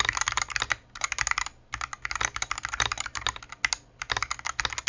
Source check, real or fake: real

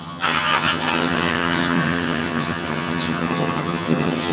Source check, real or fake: fake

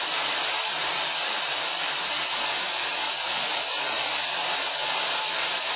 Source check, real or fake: fake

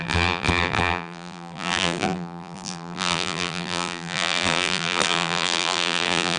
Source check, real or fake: fake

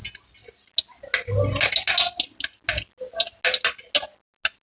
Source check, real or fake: real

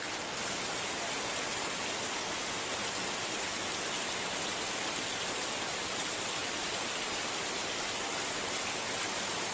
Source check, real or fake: real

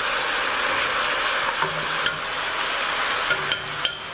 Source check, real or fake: real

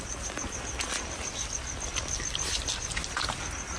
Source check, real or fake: real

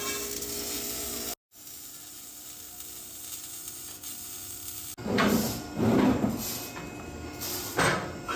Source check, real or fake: real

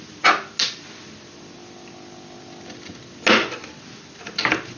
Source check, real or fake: real